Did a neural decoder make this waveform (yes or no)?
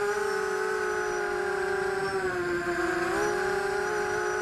no